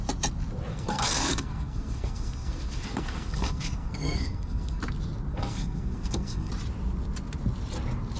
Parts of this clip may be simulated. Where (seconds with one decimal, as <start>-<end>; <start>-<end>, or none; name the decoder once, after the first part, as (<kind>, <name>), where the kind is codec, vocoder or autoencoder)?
0.7-4.8 (codec, SNAC); 5.3-6.5